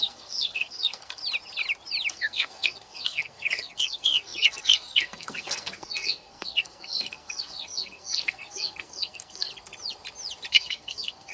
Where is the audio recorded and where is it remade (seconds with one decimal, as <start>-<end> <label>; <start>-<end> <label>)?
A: 0.0-1.2 remade; 1.2-2.1 recorded; 2.1-9.5 remade; 9.5-10.5 recorded; 10.5-11.3 remade